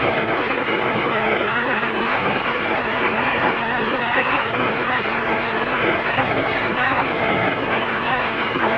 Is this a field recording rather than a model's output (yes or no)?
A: no